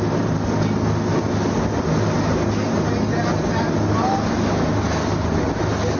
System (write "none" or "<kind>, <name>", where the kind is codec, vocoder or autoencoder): none